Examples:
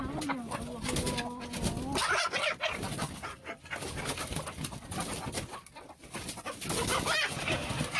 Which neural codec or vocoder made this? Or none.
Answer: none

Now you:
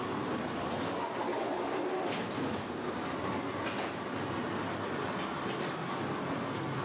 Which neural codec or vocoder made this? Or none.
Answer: none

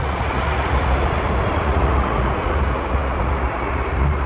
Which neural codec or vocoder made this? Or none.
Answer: vocoder, Vocos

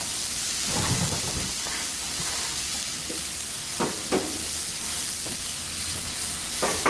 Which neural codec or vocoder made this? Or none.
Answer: none